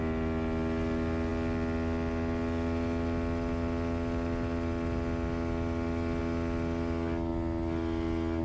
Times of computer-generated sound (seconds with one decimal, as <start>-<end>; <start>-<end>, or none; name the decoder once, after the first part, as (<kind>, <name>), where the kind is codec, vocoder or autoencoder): none